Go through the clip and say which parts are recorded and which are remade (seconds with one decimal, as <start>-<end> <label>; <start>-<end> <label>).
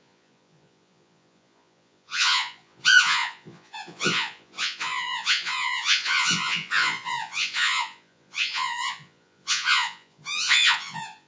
0.0-11.3 remade